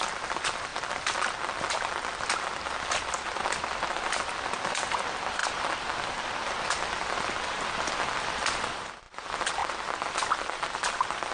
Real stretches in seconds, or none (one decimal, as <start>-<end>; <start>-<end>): 0.0-11.3